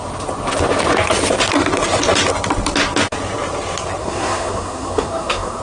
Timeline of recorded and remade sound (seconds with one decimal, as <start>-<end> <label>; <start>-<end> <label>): 0.0-4.0 recorded; 4.0-5.6 remade